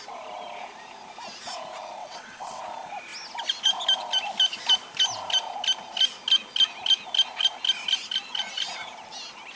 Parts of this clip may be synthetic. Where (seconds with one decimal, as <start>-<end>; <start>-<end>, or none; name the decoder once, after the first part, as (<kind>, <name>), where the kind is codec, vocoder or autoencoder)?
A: 2.0-2.6 (vocoder, WaveNeXt)